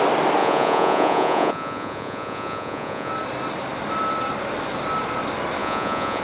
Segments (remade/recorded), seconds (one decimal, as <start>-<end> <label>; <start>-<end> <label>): 0.0-0.4 recorded; 0.4-3.1 remade; 3.1-5.6 recorded; 5.6-6.2 remade

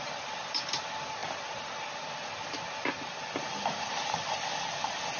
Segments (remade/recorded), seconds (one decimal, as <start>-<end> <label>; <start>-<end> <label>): 0.0-5.2 recorded

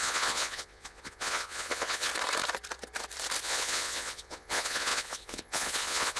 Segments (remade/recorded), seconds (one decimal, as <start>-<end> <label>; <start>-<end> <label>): 0.0-2.1 remade; 2.1-3.4 recorded; 3.4-6.2 remade

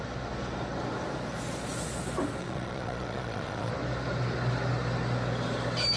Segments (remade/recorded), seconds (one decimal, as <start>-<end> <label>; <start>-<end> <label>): 0.0-2.4 recorded; 2.4-3.7 remade; 3.7-6.0 recorded

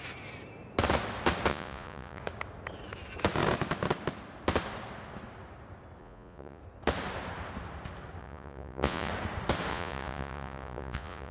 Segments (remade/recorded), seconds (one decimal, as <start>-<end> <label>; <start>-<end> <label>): 0.0-1.5 recorded; 1.5-2.2 remade; 2.2-6.0 recorded; 6.0-6.6 remade; 6.6-8.2 recorded; 8.2-9.1 remade; 9.1-9.7 recorded; 9.7-11.3 remade